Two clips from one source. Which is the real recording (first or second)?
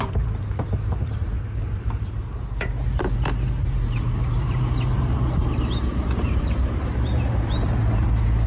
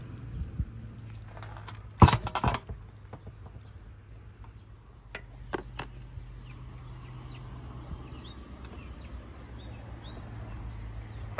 second